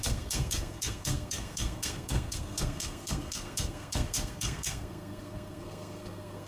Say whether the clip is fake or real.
fake